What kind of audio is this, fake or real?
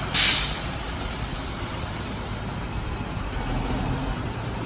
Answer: real